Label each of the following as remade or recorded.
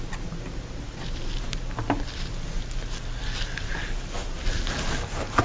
recorded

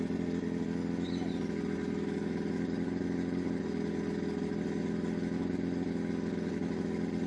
recorded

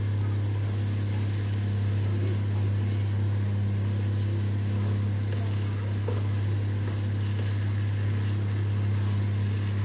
recorded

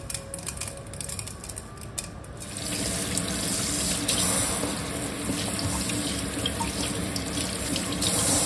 recorded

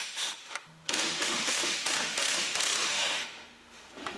remade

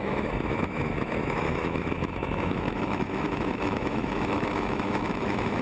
remade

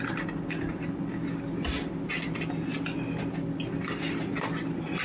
recorded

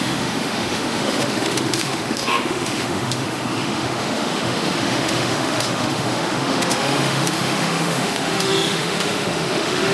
remade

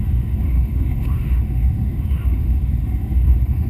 remade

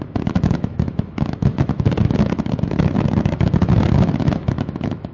remade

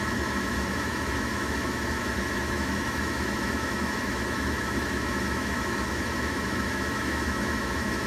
remade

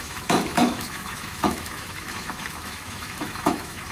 remade